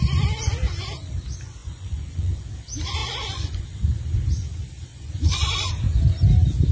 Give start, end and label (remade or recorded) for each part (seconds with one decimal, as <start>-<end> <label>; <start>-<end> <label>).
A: 0.0-1.6 recorded; 1.6-2.4 remade; 2.4-3.0 recorded; 3.0-3.6 remade; 3.6-4.9 recorded; 4.9-5.7 remade; 5.7-6.7 recorded